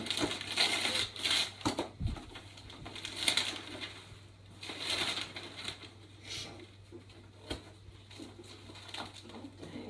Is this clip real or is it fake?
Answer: real